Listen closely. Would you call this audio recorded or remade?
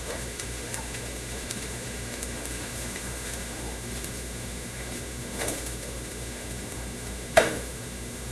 remade